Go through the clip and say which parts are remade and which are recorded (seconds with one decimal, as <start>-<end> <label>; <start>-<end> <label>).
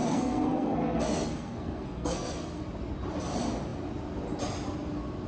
0.0-2.6 remade; 2.6-5.3 recorded